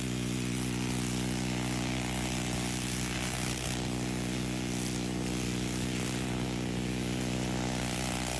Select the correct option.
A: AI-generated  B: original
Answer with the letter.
B